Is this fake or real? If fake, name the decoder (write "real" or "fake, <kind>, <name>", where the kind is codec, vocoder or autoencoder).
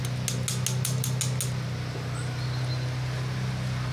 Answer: real